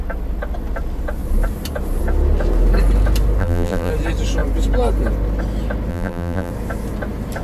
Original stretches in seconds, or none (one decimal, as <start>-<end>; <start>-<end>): 0.0-3.4; 3.9-5.9; 6.5-7.4